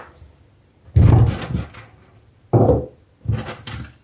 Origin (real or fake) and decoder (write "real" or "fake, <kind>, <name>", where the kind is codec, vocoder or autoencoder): real